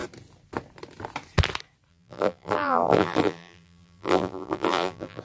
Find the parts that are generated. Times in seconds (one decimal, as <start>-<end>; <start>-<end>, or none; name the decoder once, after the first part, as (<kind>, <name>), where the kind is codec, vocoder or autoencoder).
1.9-5.2 (vocoder, BigVGAN v2)